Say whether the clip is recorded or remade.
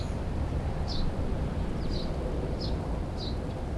recorded